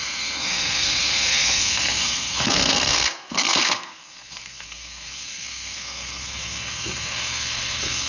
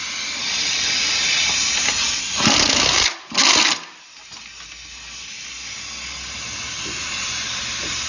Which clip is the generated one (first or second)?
first